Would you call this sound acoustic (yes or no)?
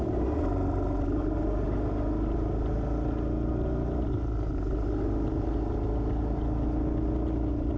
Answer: yes